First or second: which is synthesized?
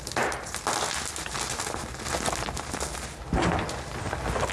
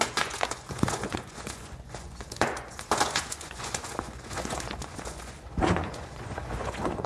second